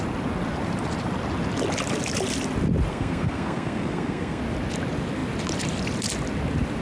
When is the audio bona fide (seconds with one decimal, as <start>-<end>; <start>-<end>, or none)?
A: 0.0-2.9; 4.4-6.8